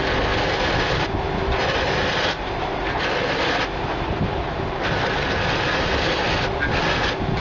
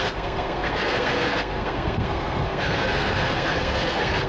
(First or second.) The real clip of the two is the first